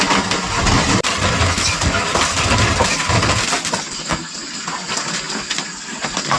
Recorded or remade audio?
recorded